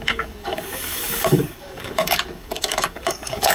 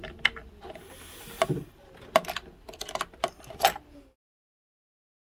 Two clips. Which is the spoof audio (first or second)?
first